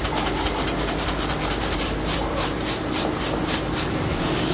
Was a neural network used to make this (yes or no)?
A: yes